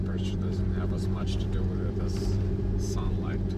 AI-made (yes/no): yes